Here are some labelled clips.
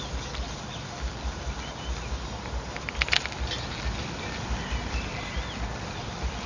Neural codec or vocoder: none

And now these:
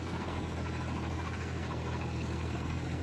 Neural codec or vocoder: codec, SNAC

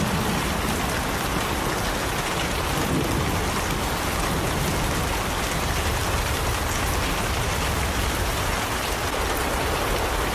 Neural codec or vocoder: none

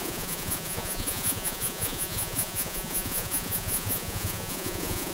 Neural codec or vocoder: vocoder, Vocos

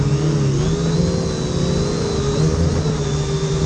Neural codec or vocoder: none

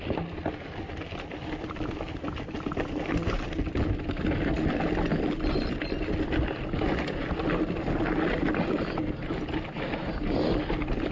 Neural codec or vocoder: none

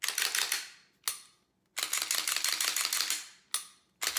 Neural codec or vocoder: none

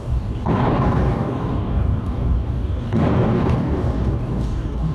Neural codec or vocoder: codec, DAC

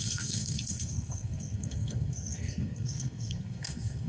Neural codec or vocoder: codec, SNAC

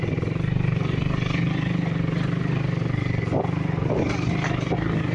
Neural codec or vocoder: none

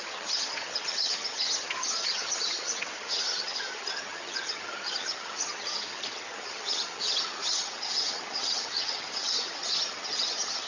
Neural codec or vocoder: vocoder, HiFi-GAN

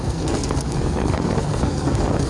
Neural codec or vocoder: codec, SNAC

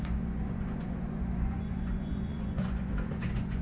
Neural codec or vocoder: vocoder, Vocos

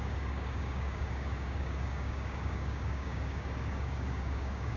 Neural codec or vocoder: codec, DAC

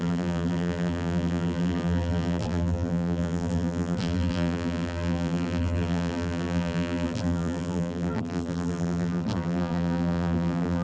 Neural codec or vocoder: vocoder, BigVGAN v2